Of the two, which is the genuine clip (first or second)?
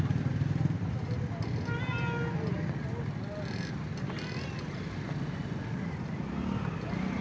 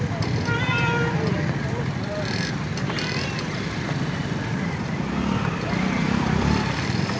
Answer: first